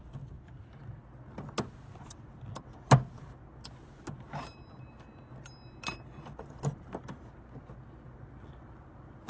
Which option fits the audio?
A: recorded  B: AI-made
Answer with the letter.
A